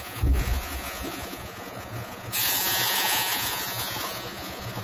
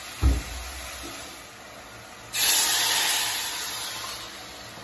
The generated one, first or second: first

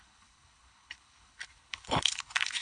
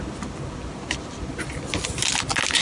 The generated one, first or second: first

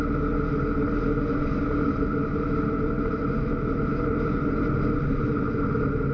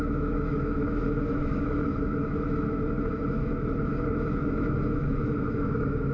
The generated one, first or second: second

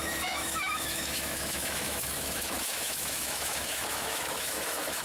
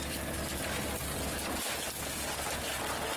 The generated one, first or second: first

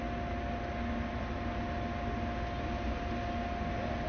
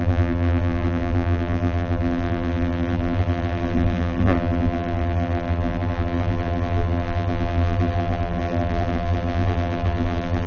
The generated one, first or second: second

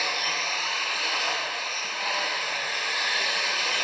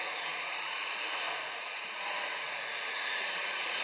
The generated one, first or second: second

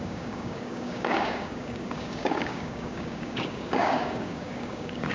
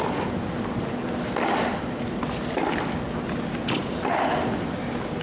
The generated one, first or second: first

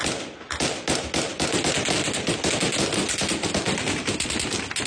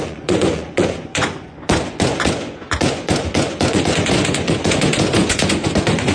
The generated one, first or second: second